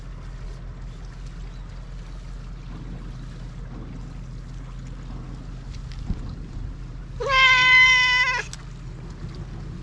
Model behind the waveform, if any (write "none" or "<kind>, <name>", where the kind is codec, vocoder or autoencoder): none